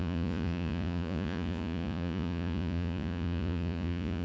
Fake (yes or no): yes